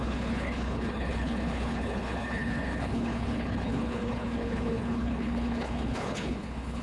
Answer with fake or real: fake